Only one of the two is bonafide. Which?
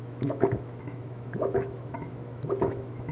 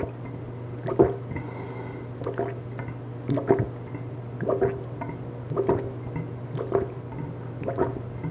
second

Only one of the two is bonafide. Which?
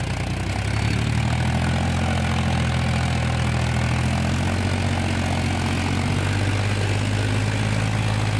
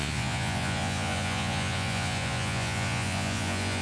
first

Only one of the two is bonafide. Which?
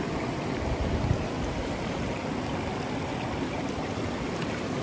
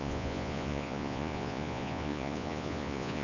first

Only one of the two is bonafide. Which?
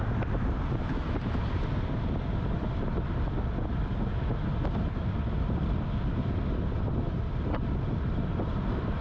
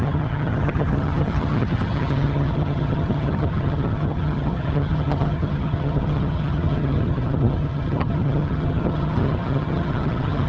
first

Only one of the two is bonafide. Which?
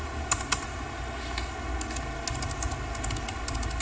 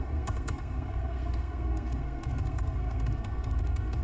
first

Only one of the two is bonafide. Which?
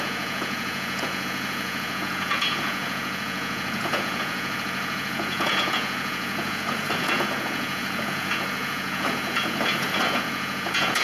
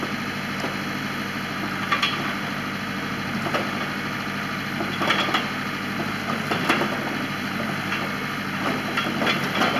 second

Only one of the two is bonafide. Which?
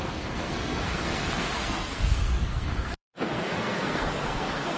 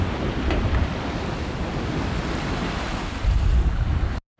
second